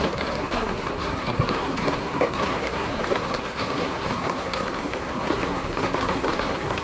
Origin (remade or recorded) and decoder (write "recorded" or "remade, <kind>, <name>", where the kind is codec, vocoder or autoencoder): remade, codec, SNAC